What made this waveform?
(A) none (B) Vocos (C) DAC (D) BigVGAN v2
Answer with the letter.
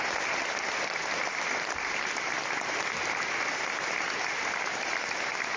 A